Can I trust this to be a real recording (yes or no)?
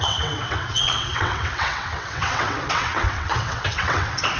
no